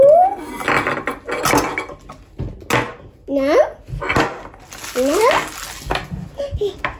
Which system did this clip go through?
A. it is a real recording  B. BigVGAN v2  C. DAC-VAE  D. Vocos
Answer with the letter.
A